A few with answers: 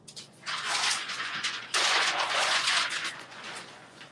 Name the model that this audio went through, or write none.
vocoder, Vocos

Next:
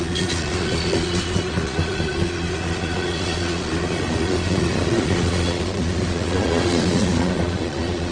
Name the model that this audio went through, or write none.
vocoder, Vocos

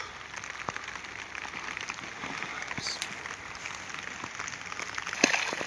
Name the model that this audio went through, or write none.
none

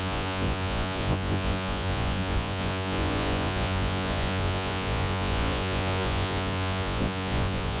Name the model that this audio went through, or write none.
vocoder, Vocos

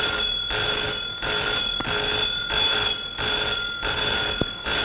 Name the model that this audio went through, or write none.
none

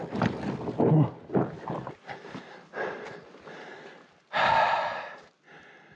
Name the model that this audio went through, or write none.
none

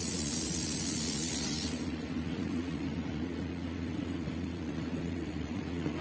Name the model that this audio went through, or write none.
vocoder, Vocos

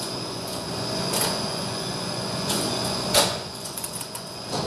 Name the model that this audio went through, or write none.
vocoder, Vocos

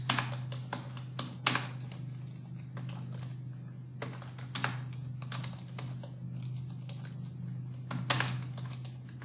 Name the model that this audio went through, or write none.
none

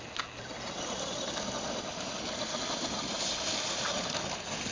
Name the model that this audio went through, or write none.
none